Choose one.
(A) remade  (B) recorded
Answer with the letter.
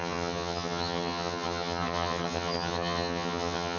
A